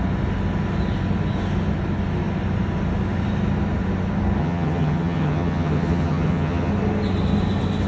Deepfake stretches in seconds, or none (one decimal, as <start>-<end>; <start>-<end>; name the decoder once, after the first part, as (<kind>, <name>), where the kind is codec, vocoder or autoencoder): 4.4-6.7 (vocoder, HiFi-GAN)